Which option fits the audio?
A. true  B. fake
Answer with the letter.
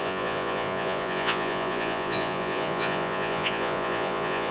B